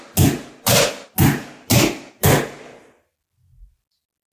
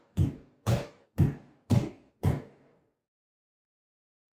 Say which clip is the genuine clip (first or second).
first